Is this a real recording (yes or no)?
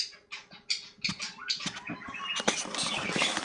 yes